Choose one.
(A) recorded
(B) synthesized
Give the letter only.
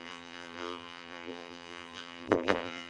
B